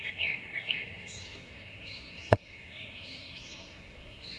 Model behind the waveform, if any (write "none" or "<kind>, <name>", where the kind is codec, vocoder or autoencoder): codec, SNAC